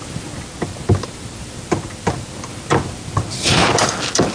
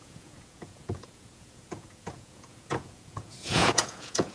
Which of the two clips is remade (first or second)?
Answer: second